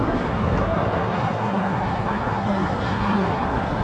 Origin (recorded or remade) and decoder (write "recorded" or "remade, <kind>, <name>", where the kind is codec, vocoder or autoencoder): remade, codec, SNAC